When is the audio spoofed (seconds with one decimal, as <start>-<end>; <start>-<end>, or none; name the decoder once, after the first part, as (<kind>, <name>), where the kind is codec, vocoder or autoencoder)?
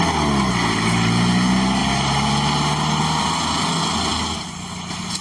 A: none